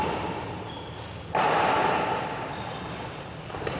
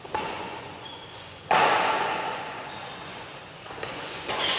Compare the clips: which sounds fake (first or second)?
second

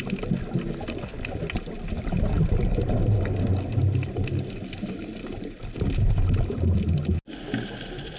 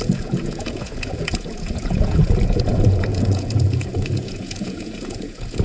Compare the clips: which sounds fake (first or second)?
second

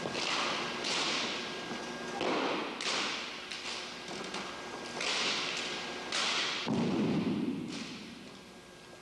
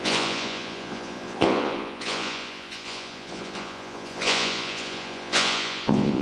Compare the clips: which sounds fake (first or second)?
second